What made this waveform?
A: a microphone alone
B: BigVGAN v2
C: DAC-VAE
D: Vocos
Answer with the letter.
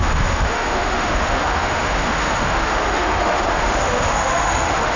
C